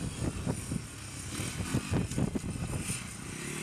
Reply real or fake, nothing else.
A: real